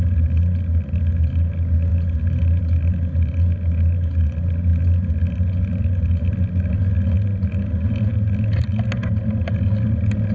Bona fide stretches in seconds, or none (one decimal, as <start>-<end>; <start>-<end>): 0.0-10.3